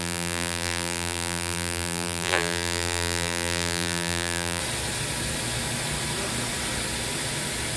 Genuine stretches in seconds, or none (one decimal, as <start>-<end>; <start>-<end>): 4.6-7.8